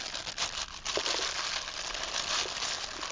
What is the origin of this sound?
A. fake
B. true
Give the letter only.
B